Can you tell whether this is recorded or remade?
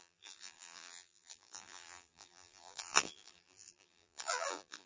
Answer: remade